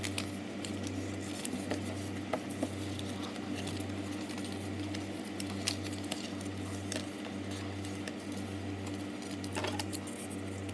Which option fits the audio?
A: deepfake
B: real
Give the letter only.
B